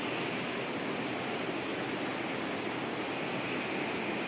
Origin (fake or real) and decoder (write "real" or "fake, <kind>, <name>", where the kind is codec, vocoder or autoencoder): real